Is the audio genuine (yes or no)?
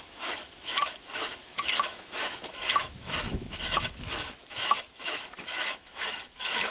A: no